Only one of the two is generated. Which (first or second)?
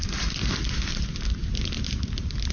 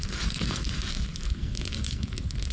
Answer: second